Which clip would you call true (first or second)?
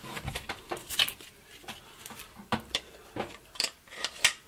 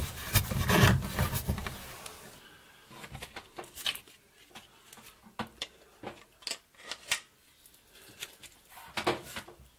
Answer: second